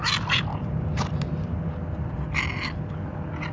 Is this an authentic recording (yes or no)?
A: yes